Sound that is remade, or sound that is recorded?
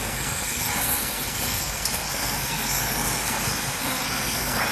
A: remade